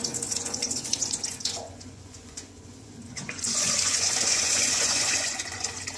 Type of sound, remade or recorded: remade